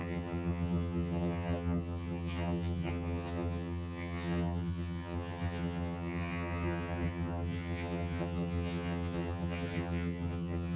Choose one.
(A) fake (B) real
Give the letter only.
A